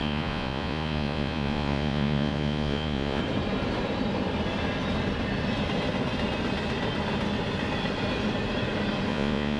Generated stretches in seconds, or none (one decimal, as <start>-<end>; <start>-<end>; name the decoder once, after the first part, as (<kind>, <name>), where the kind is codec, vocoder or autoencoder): 0.0-3.2 (vocoder, Vocos); 9.1-9.6